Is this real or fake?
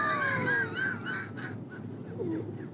real